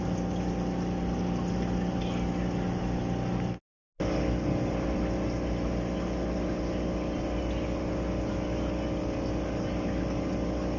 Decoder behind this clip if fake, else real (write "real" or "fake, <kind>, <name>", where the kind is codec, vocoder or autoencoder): real